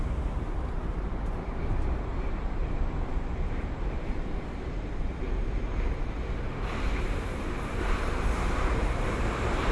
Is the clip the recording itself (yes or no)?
no